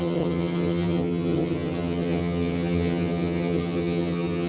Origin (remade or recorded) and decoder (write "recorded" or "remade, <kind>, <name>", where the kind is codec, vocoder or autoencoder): remade, vocoder, HiFi-GAN